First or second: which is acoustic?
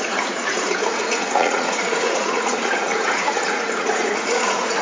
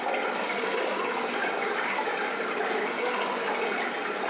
second